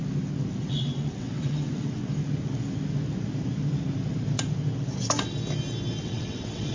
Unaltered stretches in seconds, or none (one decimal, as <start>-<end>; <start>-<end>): 0.0-0.6; 2.0-6.0